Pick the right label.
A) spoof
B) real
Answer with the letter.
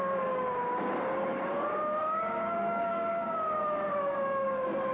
A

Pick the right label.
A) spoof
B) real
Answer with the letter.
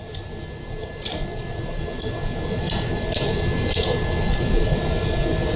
B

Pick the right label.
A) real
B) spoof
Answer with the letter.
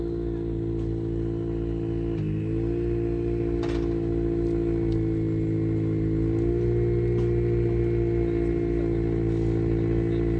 A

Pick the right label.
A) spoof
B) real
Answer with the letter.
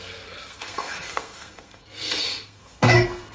A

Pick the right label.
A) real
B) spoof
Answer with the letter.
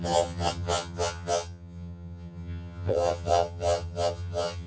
B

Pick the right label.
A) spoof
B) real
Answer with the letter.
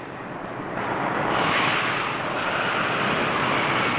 B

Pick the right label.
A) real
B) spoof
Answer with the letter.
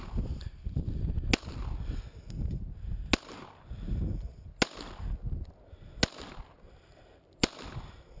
A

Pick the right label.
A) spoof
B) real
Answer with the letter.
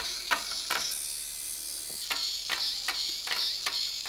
B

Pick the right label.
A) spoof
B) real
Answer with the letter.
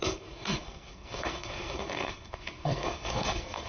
A